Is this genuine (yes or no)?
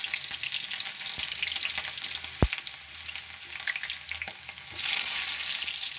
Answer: yes